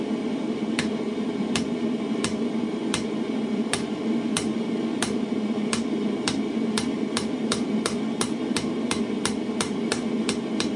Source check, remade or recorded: remade